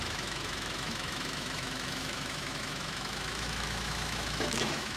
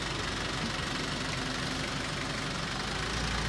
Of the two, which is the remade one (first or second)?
first